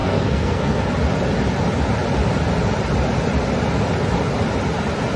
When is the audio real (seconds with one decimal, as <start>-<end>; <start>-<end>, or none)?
0.8-5.2